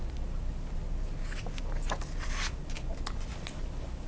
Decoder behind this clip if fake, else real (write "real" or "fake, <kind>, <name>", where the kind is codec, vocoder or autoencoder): real